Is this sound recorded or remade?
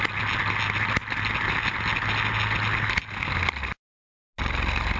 recorded